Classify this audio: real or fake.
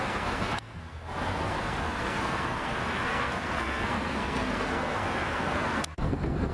fake